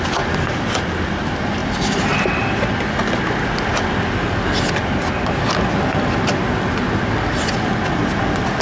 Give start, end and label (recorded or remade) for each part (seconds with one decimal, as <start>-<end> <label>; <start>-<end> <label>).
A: 0.0-8.6 recorded